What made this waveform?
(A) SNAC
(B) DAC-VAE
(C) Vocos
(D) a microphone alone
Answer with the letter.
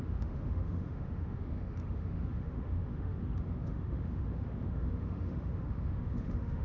B